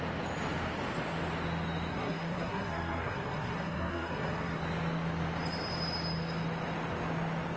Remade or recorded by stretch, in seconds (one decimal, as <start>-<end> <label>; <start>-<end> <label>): 0.0-1.9 recorded; 1.9-4.6 remade; 4.6-7.6 recorded